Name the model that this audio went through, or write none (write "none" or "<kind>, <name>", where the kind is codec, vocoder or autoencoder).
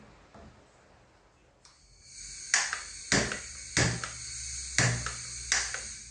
none